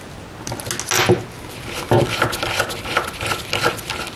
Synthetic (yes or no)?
no